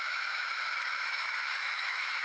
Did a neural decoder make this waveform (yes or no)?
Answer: yes